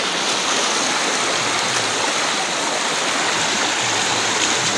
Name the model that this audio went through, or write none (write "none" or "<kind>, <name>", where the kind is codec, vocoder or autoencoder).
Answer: none